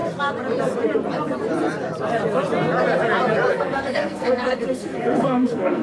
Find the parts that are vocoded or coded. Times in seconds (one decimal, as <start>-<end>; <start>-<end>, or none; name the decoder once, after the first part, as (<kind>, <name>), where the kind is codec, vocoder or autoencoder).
3.5-5.8 (codec, SNAC)